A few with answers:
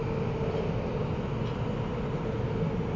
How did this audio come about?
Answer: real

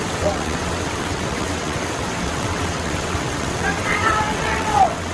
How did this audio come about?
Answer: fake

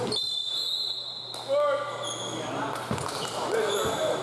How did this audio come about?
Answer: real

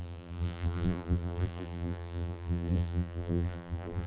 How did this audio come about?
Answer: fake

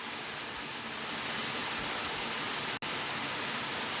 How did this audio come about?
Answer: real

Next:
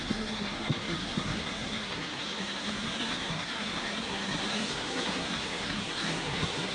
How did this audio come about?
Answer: fake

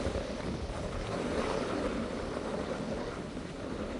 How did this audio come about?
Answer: real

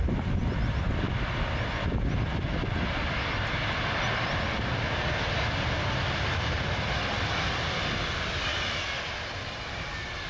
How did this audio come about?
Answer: real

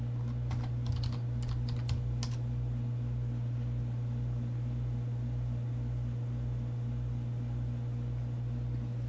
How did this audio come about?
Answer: real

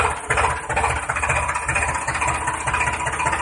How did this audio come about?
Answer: real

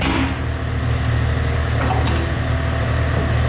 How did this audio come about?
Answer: real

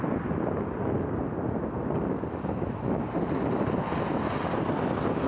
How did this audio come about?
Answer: real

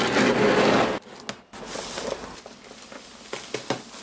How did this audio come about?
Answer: real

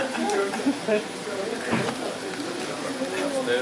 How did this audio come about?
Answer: real